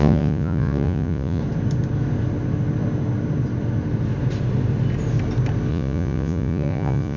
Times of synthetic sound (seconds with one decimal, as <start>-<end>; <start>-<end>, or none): 0.0-1.4; 5.7-7.2